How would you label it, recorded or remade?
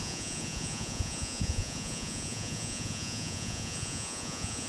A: remade